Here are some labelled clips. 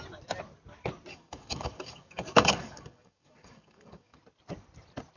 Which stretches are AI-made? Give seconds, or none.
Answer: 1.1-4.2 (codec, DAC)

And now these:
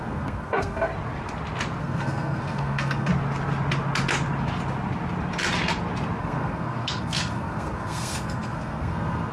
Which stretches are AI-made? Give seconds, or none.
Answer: 0.0-0.9 (codec, SNAC); 1.8-3.1; 6.2-9.3